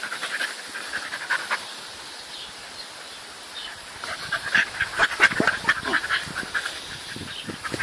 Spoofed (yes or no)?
no